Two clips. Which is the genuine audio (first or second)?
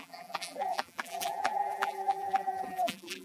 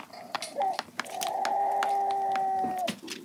second